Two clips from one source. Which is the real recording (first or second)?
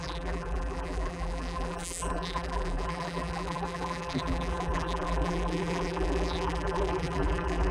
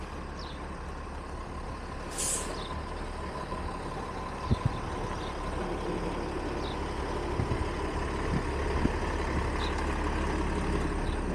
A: second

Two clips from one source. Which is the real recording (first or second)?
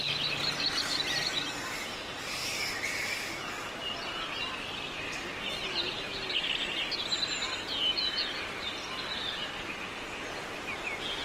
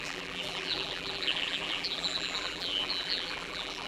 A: first